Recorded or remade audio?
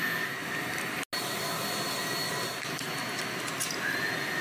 recorded